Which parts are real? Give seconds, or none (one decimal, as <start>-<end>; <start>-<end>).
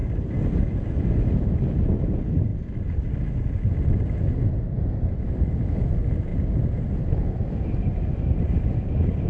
0.6-6.3; 8.8-9.3